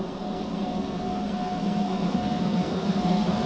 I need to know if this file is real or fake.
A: fake